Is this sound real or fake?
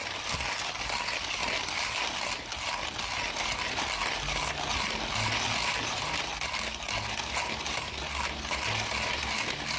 real